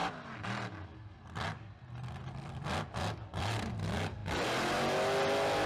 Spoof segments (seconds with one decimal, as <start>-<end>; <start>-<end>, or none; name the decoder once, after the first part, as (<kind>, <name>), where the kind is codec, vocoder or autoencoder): none